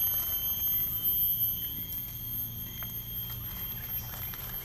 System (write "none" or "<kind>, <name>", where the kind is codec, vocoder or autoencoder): none